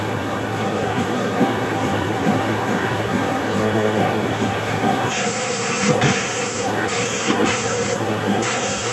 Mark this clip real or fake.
fake